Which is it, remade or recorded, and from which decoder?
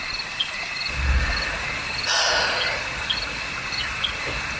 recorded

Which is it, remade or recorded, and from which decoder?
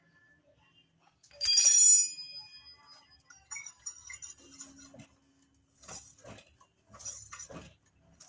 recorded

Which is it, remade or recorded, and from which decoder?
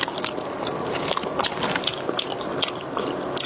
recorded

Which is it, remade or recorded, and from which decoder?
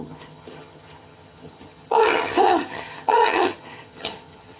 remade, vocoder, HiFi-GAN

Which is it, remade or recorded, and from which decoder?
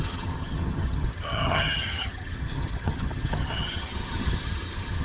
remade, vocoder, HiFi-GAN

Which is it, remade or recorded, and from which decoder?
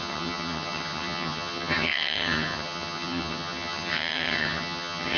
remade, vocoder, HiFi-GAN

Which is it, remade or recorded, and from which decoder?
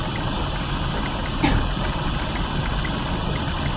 recorded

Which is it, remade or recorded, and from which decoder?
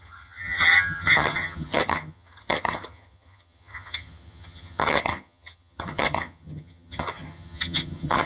remade, vocoder, HiFi-GAN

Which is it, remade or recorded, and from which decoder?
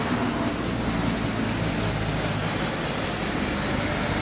recorded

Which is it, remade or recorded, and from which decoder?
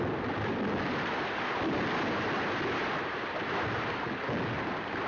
recorded